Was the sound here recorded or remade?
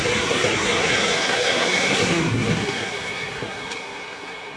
remade